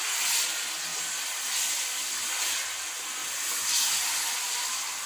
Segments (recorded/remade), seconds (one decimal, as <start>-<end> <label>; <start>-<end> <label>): 0.0-5.1 recorded